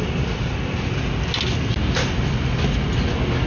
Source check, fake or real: real